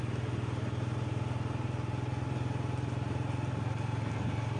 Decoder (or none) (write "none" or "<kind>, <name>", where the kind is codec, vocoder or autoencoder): none